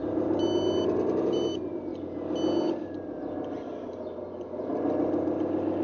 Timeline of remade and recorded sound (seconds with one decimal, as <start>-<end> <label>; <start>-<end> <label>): 0.0-5.8 recorded

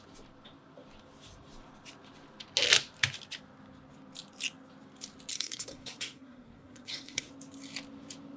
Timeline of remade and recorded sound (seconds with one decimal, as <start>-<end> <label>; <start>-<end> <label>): 0.0-5.3 recorded; 5.3-7.3 remade; 7.3-8.4 recorded

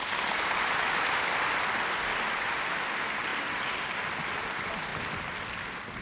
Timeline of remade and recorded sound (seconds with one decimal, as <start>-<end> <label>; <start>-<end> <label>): 0.0-6.0 recorded

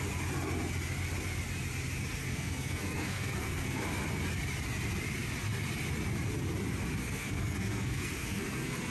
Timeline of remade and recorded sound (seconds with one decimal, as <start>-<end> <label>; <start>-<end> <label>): 0.0-2.2 recorded; 2.2-3.8 remade; 3.8-7.0 recorded; 7.0-8.9 remade

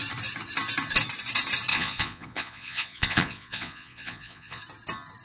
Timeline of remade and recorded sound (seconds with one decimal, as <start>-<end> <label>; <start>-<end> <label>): 0.0-1.7 recorded; 1.7-4.6 remade; 4.6-5.2 recorded

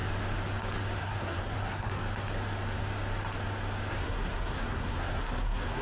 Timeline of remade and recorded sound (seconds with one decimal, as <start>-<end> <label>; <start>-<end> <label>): 0.0-1.0 recorded; 1.0-2.0 remade; 2.0-3.9 recorded; 3.9-5.8 remade

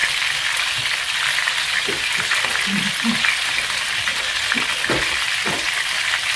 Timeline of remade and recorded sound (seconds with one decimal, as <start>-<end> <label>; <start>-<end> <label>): 0.0-6.4 recorded

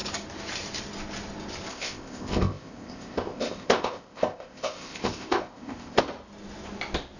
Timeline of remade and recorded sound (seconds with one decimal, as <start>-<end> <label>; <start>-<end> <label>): 0.0-1.7 recorded; 1.7-6.0 remade; 6.0-7.2 recorded